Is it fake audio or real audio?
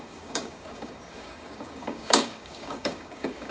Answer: fake